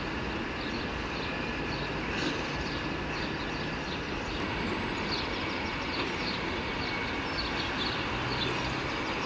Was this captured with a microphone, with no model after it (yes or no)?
yes